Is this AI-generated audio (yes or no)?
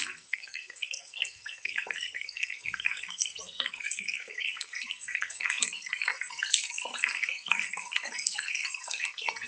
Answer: yes